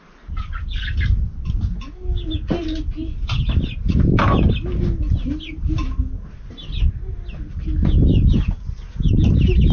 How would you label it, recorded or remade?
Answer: recorded